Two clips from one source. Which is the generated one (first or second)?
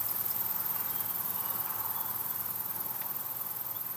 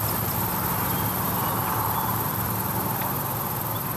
second